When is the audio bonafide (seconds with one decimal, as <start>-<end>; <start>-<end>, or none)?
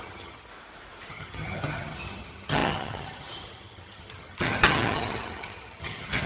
0.5-1.1